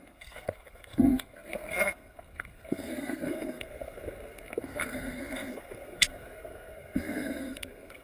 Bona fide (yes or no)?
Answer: no